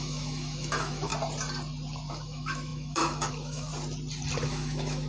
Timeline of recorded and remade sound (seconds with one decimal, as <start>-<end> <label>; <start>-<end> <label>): 0.0-1.1 remade; 1.1-2.1 recorded; 2.1-3.7 remade; 3.7-4.4 recorded; 4.4-5.1 remade